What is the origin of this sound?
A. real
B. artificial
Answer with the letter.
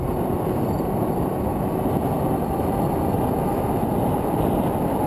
A